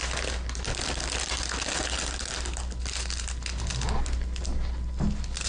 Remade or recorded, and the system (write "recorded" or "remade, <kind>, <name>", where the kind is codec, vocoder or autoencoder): recorded